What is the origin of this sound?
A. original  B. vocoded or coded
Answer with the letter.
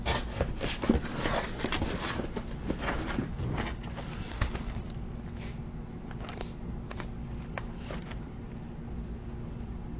A